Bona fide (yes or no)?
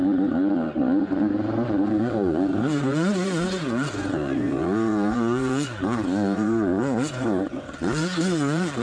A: no